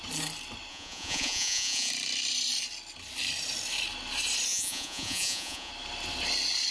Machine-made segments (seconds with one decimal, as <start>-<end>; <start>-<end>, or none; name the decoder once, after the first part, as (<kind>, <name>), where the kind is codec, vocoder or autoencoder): 0.7-1.9 (vocoder, Vocos); 4.5-5.7